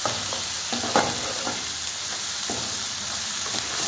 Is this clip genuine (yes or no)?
yes